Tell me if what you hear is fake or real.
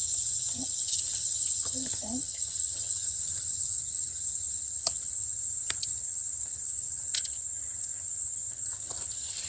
fake